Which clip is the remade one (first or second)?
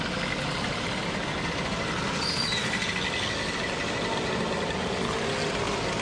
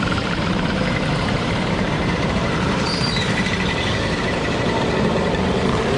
second